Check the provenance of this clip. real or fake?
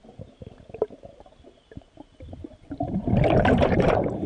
fake